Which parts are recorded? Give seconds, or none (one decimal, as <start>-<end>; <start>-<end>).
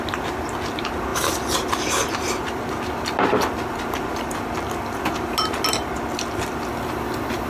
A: 0.0-7.5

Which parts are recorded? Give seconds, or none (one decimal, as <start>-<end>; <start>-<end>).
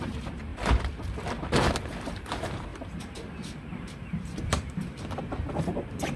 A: 0.5-1.7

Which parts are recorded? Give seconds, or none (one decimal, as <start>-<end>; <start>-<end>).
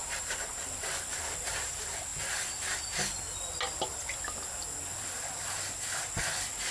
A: 0.5-6.7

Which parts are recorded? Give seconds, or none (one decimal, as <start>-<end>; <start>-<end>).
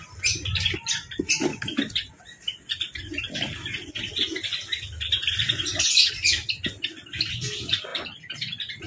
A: 0.0-8.9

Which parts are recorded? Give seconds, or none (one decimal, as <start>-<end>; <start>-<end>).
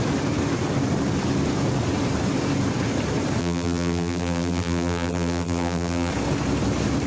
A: 0.0-3.4; 6.1-7.1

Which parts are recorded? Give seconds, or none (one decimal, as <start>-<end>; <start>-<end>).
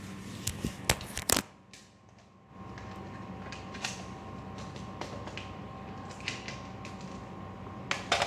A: 0.0-8.3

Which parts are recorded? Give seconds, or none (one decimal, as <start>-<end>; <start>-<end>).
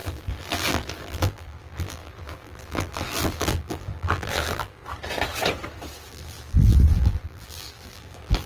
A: 4.8-6.1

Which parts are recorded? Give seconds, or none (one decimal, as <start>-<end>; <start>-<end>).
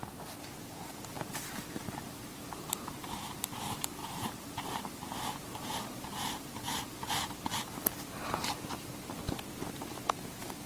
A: 0.0-0.6; 3.4-4.0; 6.8-10.7